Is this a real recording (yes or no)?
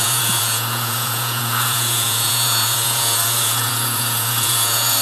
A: no